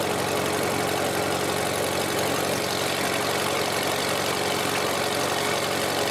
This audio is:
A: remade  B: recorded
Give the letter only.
B